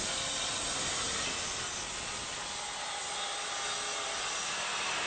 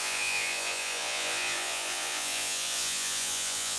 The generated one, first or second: second